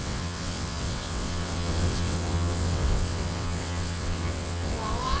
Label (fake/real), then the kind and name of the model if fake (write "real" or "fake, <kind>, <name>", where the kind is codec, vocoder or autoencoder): fake, vocoder, WaveNeXt